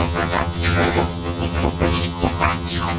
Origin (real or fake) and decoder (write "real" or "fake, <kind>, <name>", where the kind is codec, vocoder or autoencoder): fake, vocoder, HiFi-GAN